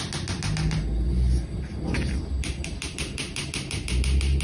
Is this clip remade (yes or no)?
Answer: no